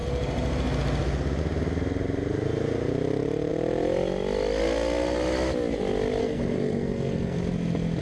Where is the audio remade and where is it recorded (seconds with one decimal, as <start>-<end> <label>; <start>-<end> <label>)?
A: 0.0-6.2 recorded; 6.2-7.4 remade; 7.4-8.0 recorded